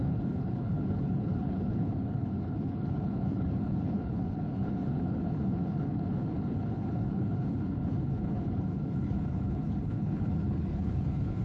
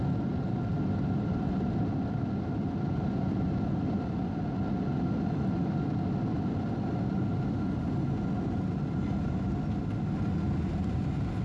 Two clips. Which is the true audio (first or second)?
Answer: second